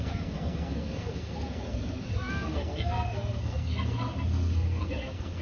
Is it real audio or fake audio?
fake